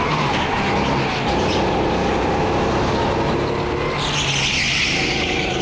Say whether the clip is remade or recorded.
recorded